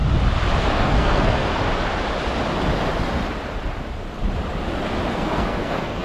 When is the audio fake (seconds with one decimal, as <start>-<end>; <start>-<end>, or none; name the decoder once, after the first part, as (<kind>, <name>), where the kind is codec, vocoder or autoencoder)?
0.6-1.5 (codec, SNAC); 5.1-6.0